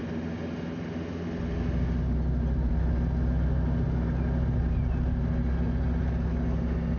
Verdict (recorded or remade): recorded